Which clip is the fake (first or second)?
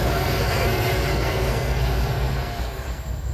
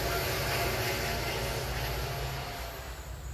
first